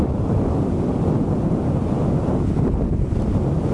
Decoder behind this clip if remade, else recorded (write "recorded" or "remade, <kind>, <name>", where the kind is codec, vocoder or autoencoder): recorded